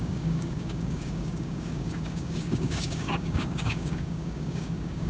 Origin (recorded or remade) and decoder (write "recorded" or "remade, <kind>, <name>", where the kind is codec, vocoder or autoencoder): remade, codec, DAC